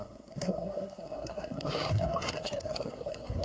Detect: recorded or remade remade